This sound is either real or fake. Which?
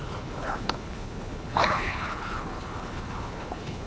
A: fake